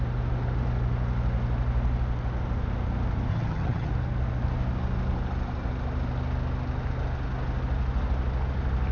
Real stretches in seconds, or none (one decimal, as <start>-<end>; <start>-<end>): 0.0-3.3; 3.9-8.9